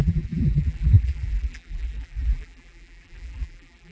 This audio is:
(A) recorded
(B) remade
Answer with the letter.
B